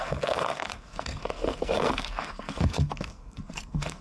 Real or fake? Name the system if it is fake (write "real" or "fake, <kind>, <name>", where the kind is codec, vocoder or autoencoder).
fake, codec, SNAC